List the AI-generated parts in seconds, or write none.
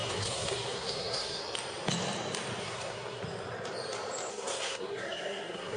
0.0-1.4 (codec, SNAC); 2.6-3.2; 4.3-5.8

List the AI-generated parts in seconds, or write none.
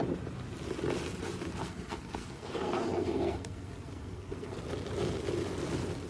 1.6-4.6 (codec, SNAC)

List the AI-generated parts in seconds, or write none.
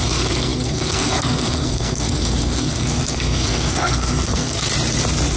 0.0-4.7 (codec, SNAC)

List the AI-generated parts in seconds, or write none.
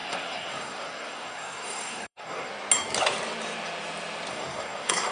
0.0-2.5 (codec, SNAC); 4.3-5.1